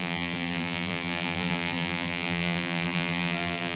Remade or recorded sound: remade